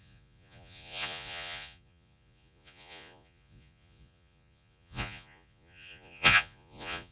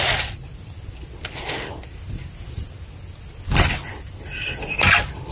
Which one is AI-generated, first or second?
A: first